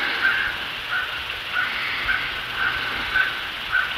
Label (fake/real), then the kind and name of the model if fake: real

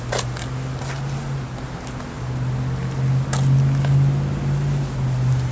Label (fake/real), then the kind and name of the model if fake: real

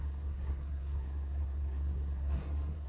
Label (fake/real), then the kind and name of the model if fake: fake, codec, SNAC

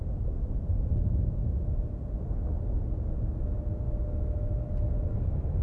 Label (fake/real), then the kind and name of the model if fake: real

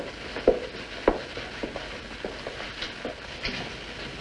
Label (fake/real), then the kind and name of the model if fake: real